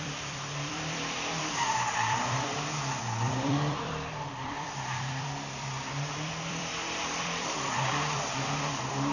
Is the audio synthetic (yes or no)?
yes